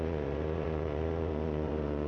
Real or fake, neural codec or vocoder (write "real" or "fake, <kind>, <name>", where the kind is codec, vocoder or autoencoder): fake, vocoder, Vocos